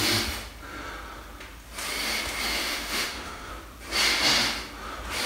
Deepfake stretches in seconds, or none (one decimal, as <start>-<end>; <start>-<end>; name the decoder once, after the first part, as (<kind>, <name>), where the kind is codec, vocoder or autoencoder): 2.5-3.5 (autoencoder, DAC-VAE)